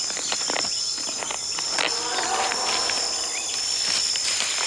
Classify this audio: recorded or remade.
recorded